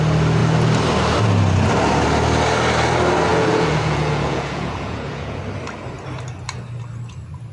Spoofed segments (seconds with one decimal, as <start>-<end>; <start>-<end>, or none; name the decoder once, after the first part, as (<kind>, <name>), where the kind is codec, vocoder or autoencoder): 3.3-5.4 (vocoder, Vocos)